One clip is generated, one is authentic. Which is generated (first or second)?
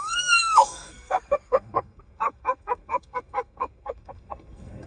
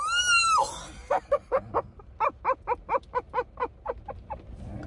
first